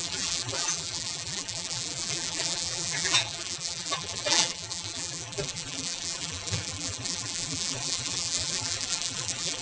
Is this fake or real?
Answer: fake